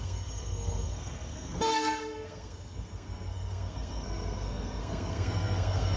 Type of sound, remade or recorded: remade